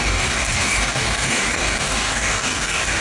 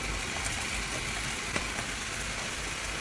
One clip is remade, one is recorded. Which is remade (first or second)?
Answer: first